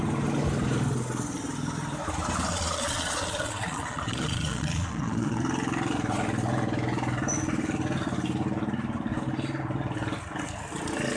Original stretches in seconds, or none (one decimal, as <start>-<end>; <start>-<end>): 0.0-2.5; 5.4-11.2